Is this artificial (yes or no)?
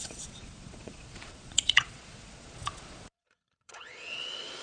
yes